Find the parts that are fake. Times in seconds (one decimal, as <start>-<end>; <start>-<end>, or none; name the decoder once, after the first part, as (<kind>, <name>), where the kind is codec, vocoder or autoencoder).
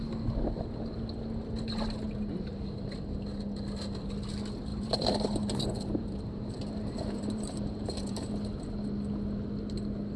4.7-8.3 (vocoder, BigVGAN v2)